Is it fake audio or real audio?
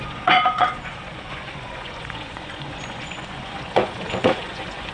fake